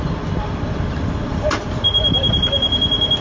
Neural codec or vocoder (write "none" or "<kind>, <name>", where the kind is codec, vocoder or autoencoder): none